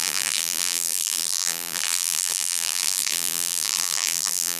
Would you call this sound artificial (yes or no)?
yes